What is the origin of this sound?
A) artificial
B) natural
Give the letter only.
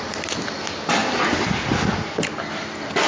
B